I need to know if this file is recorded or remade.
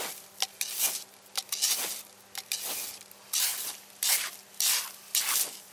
recorded